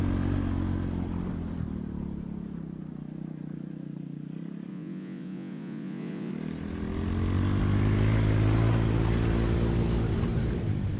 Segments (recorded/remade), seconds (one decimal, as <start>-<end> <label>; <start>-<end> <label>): 0.0-4.7 recorded; 4.7-6.3 remade; 6.3-11.0 recorded